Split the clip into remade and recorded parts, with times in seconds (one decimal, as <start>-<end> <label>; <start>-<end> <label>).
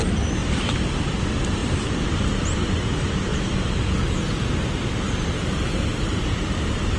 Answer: 0.0-0.4 recorded; 0.4-1.2 remade; 1.2-1.6 recorded; 1.6-2.8 remade; 2.8-7.0 recorded